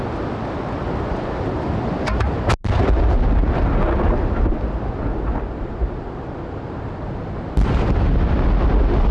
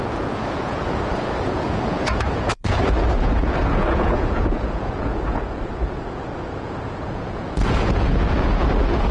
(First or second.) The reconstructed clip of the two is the second